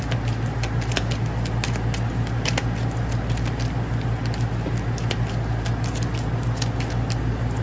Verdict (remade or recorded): recorded